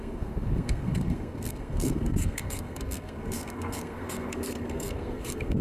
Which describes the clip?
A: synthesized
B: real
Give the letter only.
A